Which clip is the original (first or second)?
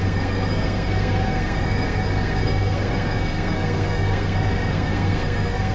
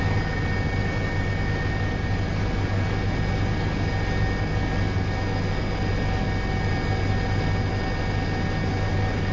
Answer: second